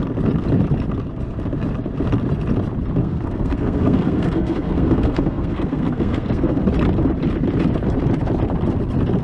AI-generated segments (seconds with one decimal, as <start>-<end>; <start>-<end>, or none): 3.0-6.6